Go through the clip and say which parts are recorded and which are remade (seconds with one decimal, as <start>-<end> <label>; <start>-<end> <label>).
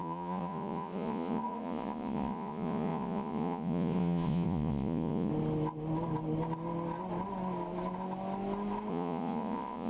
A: 0.0-5.3 remade; 5.3-8.9 recorded; 8.9-9.9 remade